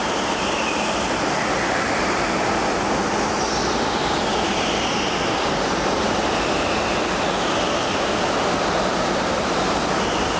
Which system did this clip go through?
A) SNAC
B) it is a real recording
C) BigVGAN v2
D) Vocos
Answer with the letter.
B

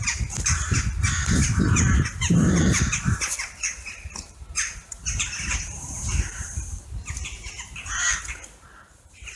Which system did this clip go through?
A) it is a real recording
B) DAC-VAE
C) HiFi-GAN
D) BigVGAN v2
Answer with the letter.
D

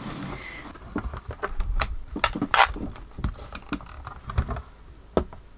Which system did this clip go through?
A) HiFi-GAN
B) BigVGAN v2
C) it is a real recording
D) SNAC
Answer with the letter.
C